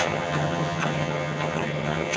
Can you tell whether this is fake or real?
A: fake